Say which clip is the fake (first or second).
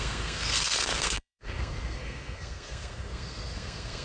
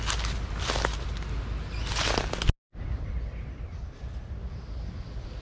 first